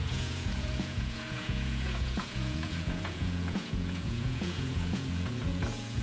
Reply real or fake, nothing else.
fake